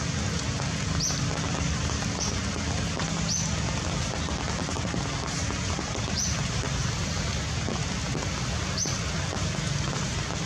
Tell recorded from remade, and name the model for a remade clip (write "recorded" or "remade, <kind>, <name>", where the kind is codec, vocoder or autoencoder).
recorded